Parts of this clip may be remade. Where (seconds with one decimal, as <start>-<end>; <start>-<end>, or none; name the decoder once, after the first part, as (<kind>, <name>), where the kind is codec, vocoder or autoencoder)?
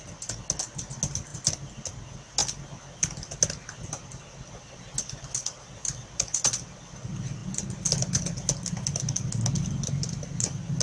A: none